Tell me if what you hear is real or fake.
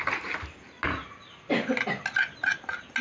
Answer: real